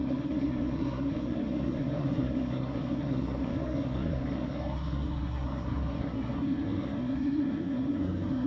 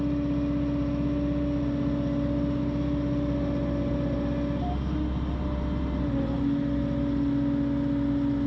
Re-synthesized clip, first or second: first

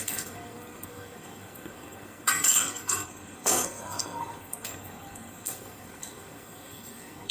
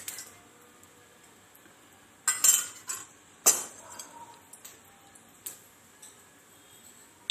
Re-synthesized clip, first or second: first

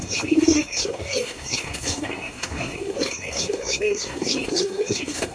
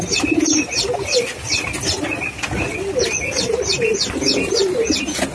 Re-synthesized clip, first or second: first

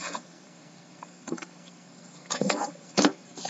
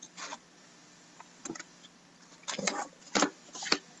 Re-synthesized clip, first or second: first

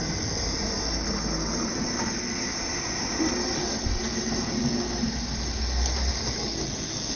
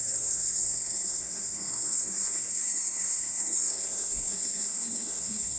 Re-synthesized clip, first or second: second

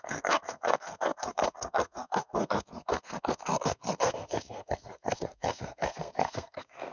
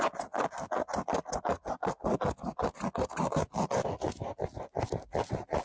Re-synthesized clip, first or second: first